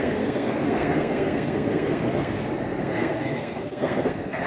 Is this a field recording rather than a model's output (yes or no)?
no